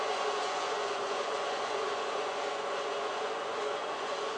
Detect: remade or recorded remade